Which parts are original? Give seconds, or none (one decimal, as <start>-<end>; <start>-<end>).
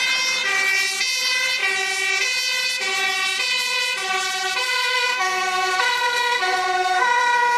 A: 0.0-4.6